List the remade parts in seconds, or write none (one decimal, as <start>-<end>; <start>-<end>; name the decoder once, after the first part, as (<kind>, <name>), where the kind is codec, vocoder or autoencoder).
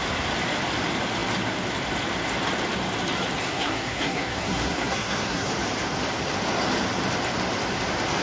3.4-5.5 (codec, SNAC)